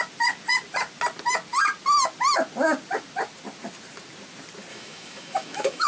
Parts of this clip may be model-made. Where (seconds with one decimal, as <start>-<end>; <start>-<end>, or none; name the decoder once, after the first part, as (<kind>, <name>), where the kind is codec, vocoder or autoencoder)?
4.7-5.9 (autoencoder, DAC-VAE)